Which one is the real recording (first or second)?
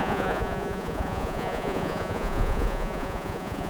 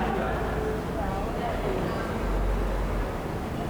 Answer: second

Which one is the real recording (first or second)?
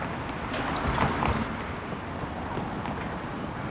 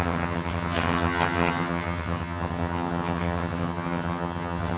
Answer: first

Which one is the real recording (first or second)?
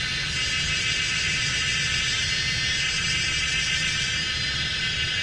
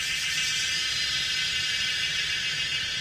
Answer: first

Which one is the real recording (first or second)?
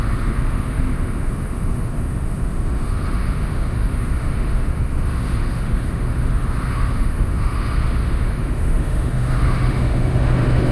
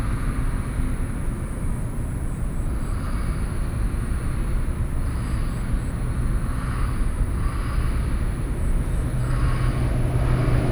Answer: second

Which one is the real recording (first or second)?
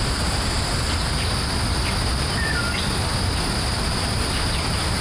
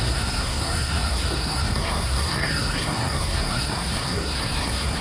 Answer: first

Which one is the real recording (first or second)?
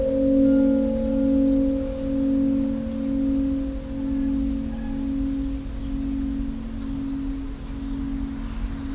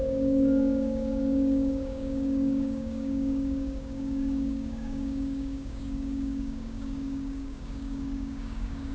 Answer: first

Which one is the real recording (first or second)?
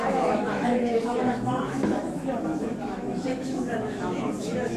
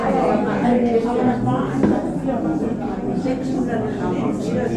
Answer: second